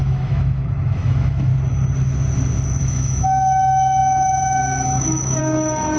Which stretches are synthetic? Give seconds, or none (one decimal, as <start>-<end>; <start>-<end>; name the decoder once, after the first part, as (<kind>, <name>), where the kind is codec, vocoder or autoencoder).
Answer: 0.0-1.5 (autoencoder, DAC-VAE); 2.8-6.0